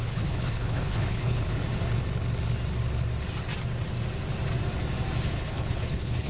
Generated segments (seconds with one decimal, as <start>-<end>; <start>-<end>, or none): 0.0-1.6; 5.3-6.3